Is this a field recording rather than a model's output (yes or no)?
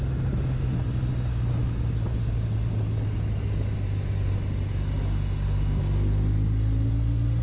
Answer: yes